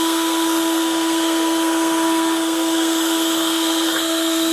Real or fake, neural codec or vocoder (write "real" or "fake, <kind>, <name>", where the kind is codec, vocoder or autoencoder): fake, codec, SNAC